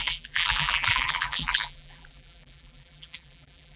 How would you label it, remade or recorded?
remade